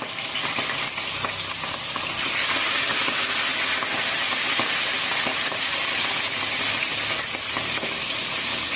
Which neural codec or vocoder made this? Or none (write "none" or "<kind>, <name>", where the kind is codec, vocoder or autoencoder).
none